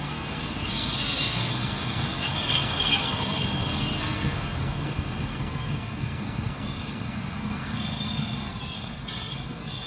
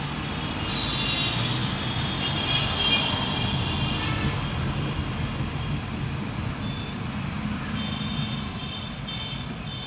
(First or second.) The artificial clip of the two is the first